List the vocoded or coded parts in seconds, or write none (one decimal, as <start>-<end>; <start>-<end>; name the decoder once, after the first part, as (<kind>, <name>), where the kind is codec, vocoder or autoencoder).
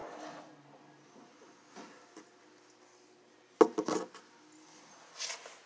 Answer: none